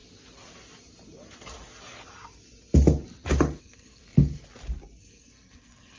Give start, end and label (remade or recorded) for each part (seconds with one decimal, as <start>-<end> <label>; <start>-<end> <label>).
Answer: 0.0-3.6 recorded; 3.6-4.0 remade; 4.0-5.0 recorded; 5.0-6.0 remade